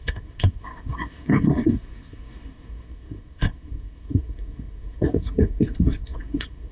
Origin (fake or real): fake